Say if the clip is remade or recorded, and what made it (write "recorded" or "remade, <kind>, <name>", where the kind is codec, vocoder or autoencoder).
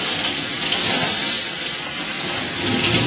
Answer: recorded